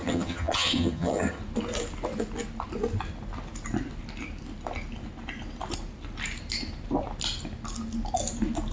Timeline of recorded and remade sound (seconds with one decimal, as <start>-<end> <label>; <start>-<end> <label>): 0.0-1.4 remade; 1.4-8.7 recorded